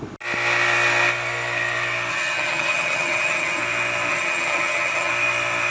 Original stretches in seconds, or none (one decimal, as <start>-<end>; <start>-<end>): 0.0-2.1; 3.6-4.1; 5.1-5.7